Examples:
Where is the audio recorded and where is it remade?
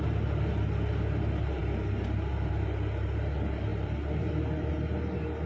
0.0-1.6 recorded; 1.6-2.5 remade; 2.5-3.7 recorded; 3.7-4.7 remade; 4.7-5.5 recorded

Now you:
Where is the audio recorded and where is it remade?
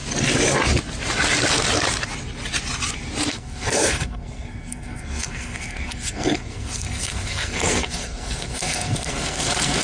0.0-3.3 recorded; 3.3-9.8 remade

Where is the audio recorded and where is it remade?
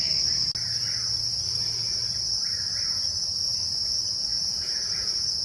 0.0-4.3 recorded; 4.3-5.4 remade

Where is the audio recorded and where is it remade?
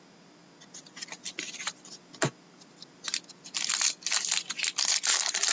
0.0-5.5 recorded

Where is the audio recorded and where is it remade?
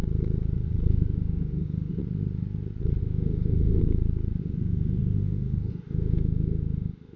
0.0-0.9 recorded; 0.9-2.0 remade; 2.0-3.0 recorded; 3.0-3.8 remade; 3.8-4.4 recorded; 4.4-7.2 remade